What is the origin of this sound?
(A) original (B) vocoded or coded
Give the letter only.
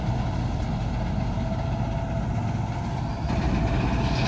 A